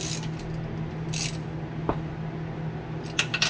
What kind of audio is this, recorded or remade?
recorded